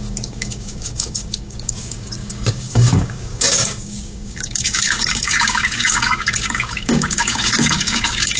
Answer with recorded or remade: remade